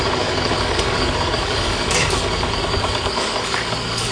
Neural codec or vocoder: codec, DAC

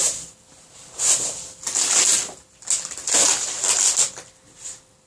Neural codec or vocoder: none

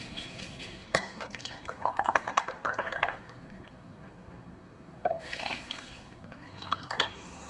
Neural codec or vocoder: codec, SNAC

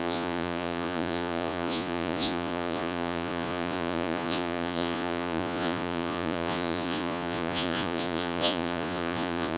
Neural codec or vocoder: vocoder, Vocos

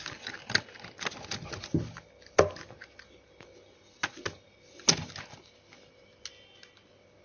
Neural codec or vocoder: none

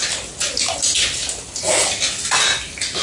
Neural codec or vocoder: none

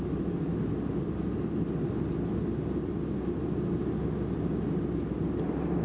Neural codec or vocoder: none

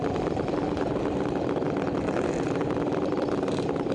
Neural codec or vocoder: none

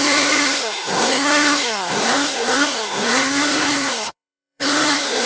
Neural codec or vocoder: codec, SNAC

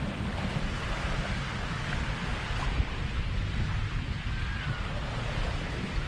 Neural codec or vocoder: none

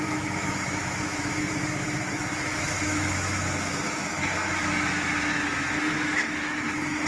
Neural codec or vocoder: autoencoder, DAC-VAE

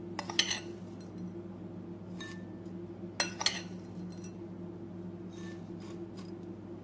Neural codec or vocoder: none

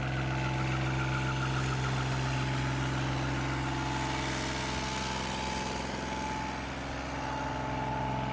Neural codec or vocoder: none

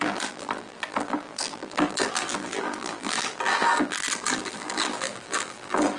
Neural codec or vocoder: vocoder, BigVGAN v2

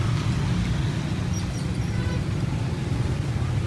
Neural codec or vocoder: none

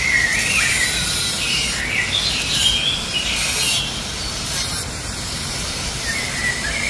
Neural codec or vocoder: none